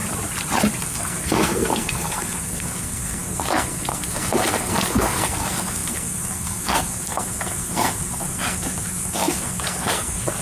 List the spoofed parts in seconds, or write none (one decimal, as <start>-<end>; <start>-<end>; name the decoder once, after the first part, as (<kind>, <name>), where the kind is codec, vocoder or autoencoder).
0.8-10.4 (codec, SNAC)